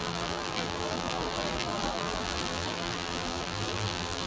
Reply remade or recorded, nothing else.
remade